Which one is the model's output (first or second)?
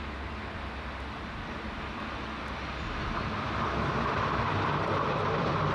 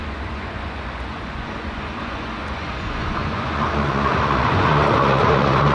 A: second